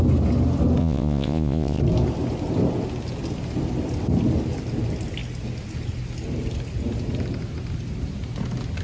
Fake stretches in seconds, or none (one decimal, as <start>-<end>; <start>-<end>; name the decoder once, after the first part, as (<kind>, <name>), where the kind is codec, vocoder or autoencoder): 0.8-1.8 (vocoder, Vocos)

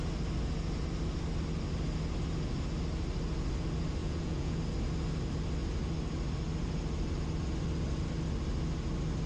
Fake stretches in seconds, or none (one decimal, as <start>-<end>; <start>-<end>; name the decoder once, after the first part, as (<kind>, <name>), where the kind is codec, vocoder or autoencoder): 4.0-4.6 (vocoder, Vocos)

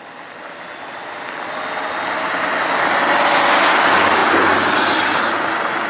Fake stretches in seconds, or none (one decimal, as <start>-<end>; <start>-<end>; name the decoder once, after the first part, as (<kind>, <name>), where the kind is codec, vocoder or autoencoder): none

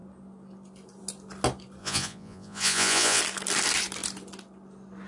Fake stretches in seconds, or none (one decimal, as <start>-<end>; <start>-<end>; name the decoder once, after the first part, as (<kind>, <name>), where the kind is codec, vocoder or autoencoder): 1.8-3.2 (vocoder, Vocos)

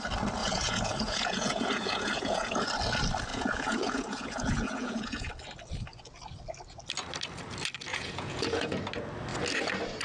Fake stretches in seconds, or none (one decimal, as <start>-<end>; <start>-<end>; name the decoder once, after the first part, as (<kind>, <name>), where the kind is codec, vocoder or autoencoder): 0.4-2.7 (vocoder, Vocos); 3.3-5.3; 7.9-8.8